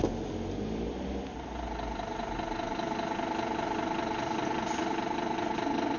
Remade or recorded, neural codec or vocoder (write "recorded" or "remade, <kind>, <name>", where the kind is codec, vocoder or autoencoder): recorded